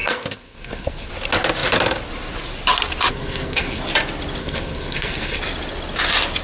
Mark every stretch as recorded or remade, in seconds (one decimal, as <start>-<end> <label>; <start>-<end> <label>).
0.0-1.1 remade; 1.1-3.1 recorded; 3.1-3.8 remade; 3.8-4.4 recorded; 4.4-5.4 remade; 5.4-6.4 recorded